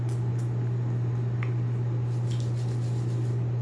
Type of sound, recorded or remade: recorded